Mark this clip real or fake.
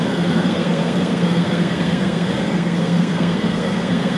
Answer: fake